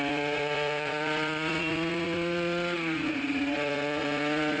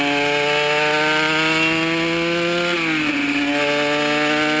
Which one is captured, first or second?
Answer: second